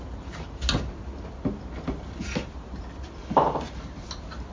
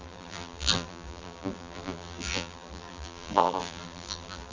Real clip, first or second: first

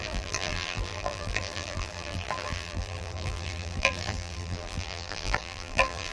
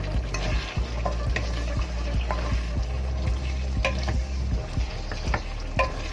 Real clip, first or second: second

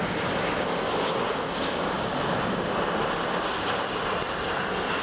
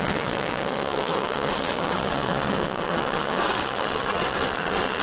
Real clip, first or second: first